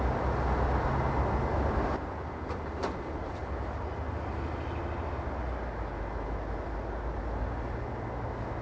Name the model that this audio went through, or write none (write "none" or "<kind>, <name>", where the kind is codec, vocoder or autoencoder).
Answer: none